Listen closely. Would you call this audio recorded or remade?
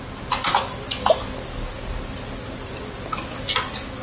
recorded